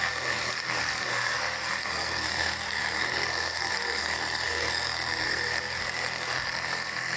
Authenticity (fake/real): fake